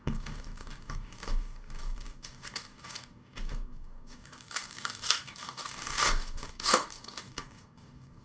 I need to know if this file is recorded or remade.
remade